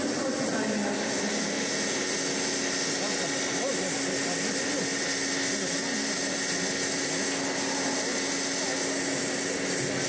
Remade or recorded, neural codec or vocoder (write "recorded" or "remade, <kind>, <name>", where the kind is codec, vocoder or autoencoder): recorded